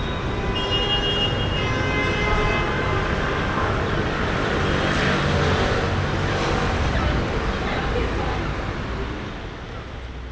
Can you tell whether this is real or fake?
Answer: real